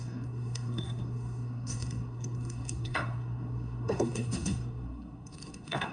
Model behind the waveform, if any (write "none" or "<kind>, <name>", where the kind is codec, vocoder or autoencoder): codec, SNAC